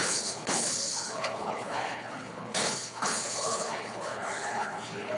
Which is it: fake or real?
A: fake